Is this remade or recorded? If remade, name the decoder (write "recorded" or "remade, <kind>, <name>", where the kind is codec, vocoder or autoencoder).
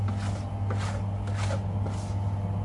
recorded